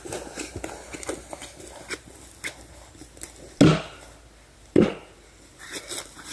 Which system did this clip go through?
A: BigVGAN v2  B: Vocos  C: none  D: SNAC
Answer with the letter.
C